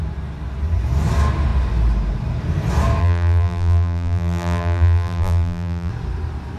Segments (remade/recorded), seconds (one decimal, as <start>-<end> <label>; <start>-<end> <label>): 0.0-3.0 recorded; 3.0-5.9 remade; 5.9-6.6 recorded